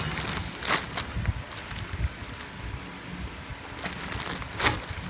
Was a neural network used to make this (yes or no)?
no